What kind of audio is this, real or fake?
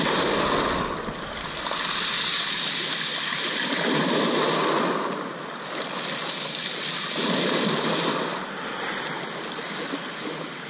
real